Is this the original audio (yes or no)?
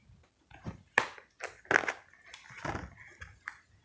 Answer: yes